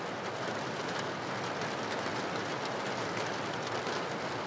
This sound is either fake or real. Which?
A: real